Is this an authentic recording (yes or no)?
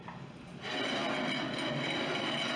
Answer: yes